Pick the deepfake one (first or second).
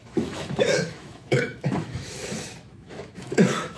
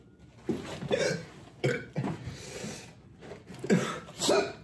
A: first